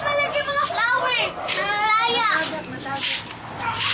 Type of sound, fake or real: fake